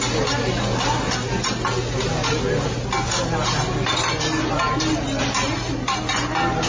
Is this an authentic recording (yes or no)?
yes